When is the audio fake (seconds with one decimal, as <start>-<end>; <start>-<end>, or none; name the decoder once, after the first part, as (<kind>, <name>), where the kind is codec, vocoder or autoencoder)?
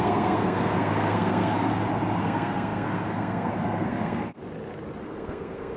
0.0-1.7 (codec, SNAC); 2.2-4.4; 5.0-5.8